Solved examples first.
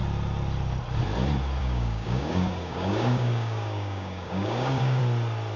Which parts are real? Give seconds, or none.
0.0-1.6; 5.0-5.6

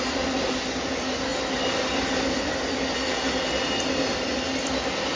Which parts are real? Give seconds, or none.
0.0-5.2

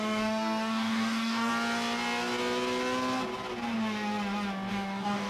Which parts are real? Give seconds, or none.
1.5-4.7

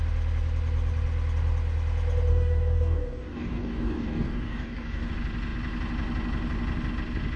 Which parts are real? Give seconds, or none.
0.0-2.3; 5.1-7.4

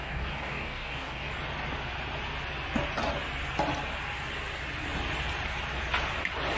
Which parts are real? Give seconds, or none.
1.3-6.6

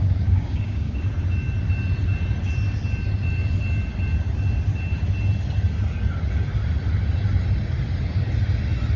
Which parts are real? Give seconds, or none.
1.1-9.0

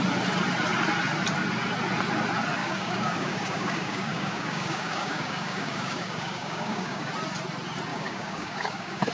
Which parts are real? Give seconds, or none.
0.0-2.6; 7.1-7.9

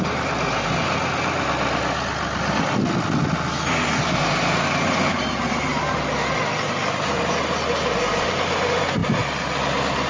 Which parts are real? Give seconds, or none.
0.0-10.1